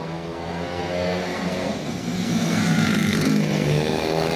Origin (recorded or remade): remade